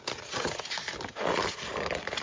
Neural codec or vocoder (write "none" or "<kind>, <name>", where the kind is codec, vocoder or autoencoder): none